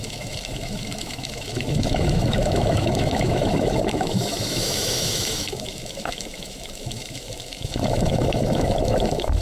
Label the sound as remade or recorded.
remade